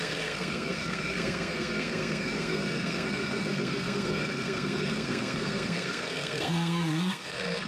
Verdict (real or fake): fake